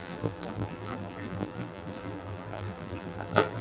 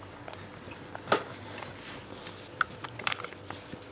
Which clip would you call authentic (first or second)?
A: second